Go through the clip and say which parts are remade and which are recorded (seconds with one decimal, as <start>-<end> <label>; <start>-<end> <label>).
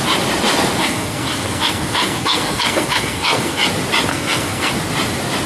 0.0-0.8 recorded; 0.8-3.6 remade; 3.6-4.1 recorded; 4.1-4.7 remade; 4.7-5.5 recorded